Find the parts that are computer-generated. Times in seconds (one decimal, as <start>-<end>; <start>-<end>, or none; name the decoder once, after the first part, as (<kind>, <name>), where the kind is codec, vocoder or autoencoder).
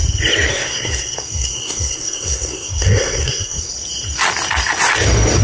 0.5-3.7 (codec, SNAC)